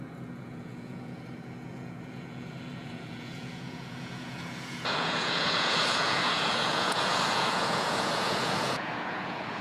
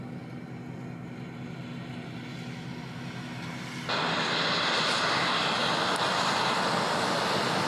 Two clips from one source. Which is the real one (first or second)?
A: second